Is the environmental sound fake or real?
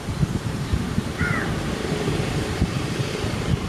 fake